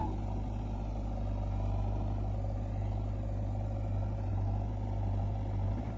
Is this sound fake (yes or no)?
no